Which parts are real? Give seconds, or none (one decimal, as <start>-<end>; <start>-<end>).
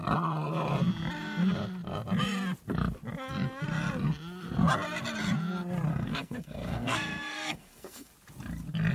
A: 0.0-5.9; 8.1-8.9